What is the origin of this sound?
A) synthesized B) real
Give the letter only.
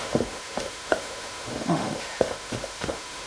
A